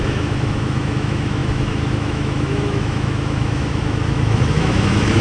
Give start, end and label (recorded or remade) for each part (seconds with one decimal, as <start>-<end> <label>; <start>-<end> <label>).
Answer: 0.0-5.2 remade

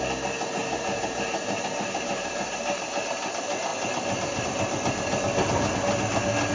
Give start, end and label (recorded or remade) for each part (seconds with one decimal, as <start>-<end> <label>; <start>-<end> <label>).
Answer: 0.0-0.6 recorded; 0.6-2.8 remade; 2.8-6.5 recorded

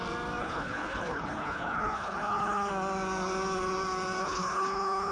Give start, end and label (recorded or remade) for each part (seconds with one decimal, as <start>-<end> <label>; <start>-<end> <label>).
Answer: 0.0-0.4 recorded; 0.4-2.7 remade; 2.7-4.2 recorded; 4.2-5.1 remade

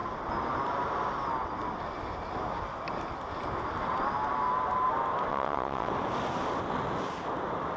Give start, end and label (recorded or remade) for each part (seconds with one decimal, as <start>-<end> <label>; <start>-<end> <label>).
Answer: 0.0-5.3 recorded; 5.3-5.9 remade; 5.9-7.8 recorded

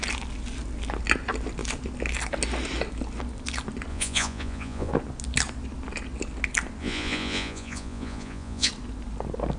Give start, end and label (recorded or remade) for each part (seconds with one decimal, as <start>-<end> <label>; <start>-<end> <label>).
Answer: 0.0-3.9 recorded; 3.9-4.9 remade; 4.9-6.8 recorded; 6.8-8.7 remade; 8.7-9.6 recorded

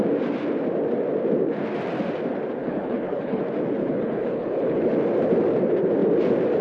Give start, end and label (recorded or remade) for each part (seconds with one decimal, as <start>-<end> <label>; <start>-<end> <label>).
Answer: 0.0-2.6 recorded; 2.6-3.4 remade; 3.4-3.8 recorded; 3.8-4.9 remade; 4.9-6.6 recorded

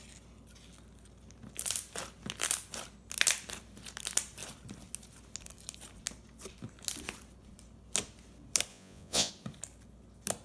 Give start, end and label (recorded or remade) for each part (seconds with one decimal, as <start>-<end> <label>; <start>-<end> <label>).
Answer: 0.0-8.7 recorded; 8.7-9.3 remade; 9.3-10.4 recorded